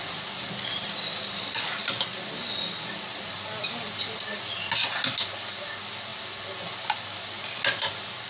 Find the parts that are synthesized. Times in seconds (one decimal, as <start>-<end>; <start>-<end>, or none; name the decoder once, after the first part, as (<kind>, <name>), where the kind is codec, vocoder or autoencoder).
none